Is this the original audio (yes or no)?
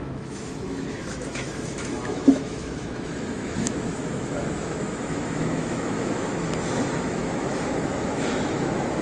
no